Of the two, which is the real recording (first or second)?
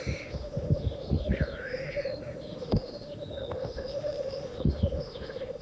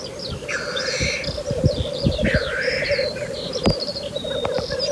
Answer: second